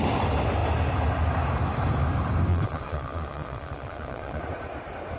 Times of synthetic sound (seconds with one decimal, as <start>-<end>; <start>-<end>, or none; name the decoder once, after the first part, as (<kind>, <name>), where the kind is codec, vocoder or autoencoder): 2.5-4.4 (vocoder, Vocos)